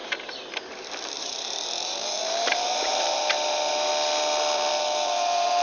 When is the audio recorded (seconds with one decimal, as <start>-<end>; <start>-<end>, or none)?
0.0-1.2; 3.9-4.7